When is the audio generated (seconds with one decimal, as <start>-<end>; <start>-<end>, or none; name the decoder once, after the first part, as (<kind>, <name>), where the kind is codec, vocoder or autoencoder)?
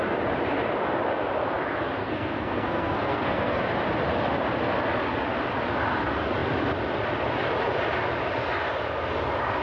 2.0-3.6 (codec, SNAC)